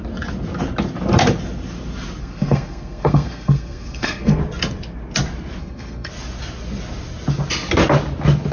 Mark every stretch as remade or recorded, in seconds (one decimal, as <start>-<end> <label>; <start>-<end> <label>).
0.0-2.2 recorded; 2.2-4.4 remade; 4.4-5.6 recorded; 5.6-6.1 remade; 6.1-8.5 recorded